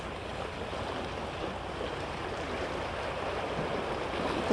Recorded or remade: recorded